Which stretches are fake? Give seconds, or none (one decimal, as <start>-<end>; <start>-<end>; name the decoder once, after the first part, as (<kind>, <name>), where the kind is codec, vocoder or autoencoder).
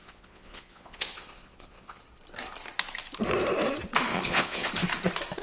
0.0-2.0 (vocoder, Vocos); 4.1-4.7